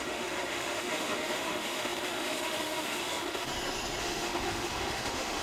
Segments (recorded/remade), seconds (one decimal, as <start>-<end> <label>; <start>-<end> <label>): 0.0-3.5 remade; 3.5-4.0 recorded; 4.0-5.4 remade